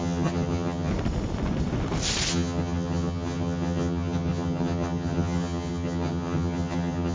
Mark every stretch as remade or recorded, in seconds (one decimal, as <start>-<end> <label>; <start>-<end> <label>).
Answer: 0.0-0.9 remade; 0.9-2.3 recorded; 2.3-7.1 remade

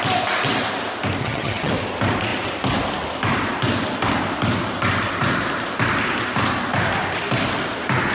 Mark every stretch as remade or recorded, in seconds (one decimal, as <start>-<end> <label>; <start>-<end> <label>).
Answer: 0.0-1.2 recorded; 1.2-1.7 remade; 1.7-8.1 recorded

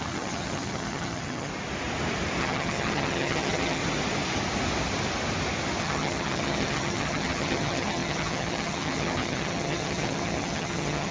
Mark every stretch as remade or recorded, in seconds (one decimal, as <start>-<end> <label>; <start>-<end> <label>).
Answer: 0.0-1.5 remade; 1.5-2.4 recorded; 2.4-3.8 remade; 3.8-5.8 recorded; 5.8-11.1 remade

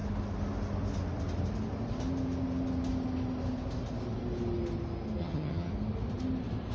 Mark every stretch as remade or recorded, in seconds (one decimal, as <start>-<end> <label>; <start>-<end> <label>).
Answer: 0.0-5.2 recorded; 5.2-5.7 remade; 5.7-6.7 recorded